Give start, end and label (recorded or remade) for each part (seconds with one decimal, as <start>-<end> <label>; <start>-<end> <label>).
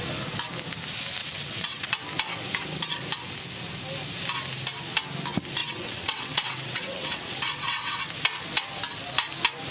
0.0-1.2 recorded; 1.2-1.9 remade; 1.9-5.6 recorded; 5.6-8.0 remade; 8.0-9.7 recorded